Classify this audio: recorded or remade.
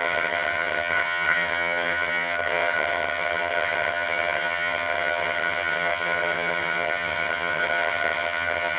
remade